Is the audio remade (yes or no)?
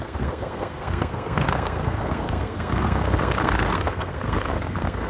yes